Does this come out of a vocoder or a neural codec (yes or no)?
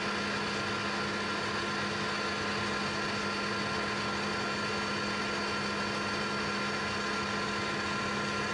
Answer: no